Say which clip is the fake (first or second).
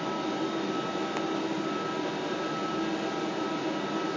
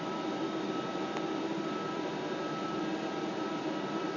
second